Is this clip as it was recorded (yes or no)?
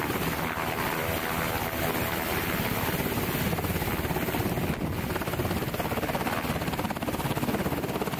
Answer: yes